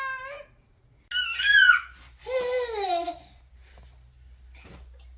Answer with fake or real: real